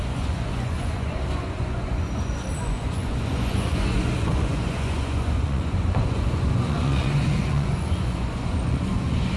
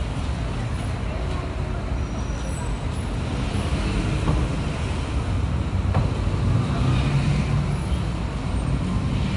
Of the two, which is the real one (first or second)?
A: second